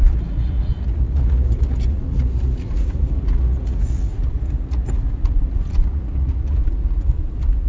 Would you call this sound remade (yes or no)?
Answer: yes